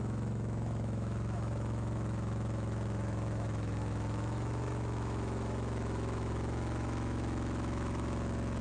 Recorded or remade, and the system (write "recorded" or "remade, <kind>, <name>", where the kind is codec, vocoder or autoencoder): remade, autoencoder, DAC-VAE